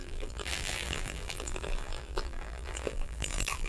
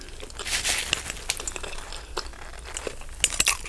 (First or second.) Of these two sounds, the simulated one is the first